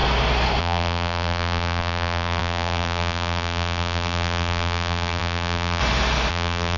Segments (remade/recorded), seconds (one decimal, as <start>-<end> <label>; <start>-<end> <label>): 0.0-0.6 recorded; 0.6-5.8 remade; 5.8-6.3 recorded; 6.3-6.8 remade